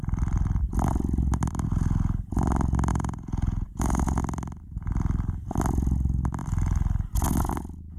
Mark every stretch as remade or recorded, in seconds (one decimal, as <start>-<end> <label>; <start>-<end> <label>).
0.0-2.9 recorded; 2.9-4.2 remade; 4.2-8.0 recorded